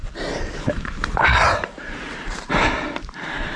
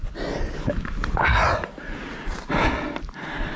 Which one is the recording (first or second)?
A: second